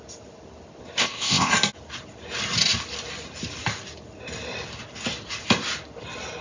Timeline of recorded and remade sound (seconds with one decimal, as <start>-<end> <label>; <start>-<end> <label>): 0.0-1.0 recorded; 1.0-1.5 remade; 1.5-6.4 recorded